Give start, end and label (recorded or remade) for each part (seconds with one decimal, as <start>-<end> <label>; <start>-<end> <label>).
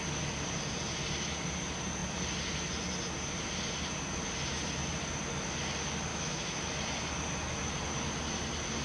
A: 0.0-6.1 recorded; 6.1-6.7 remade; 6.7-8.8 recorded